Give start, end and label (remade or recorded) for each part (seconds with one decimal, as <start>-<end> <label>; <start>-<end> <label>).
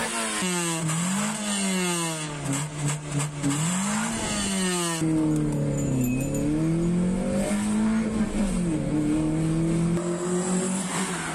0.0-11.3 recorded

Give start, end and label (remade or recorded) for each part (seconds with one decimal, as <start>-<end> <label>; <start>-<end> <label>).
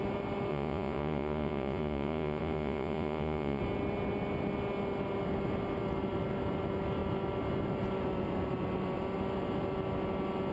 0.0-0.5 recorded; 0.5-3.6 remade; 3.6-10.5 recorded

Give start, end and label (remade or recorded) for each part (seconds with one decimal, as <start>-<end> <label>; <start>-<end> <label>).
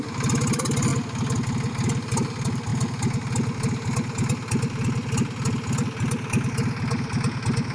0.0-7.7 recorded